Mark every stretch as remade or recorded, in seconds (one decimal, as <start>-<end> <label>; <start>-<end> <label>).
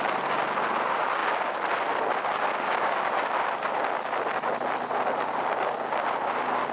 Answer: 0.0-6.7 recorded